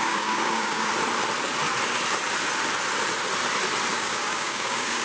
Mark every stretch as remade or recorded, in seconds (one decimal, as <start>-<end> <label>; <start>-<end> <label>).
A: 0.0-0.9 remade; 0.9-3.9 recorded; 3.9-5.0 remade